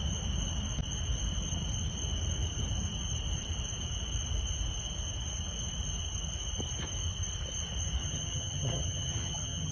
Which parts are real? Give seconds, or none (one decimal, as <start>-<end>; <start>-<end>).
0.0-8.0